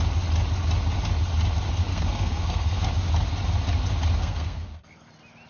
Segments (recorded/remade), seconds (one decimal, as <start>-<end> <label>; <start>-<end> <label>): 0.0-1.9 recorded; 1.9-2.9 remade; 2.9-4.2 recorded; 4.2-5.1 remade; 5.1-5.5 recorded